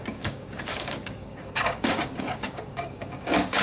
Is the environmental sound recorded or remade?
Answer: remade